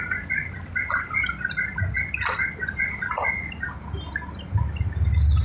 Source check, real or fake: real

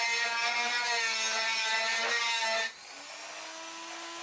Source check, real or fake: real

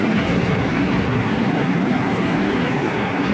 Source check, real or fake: fake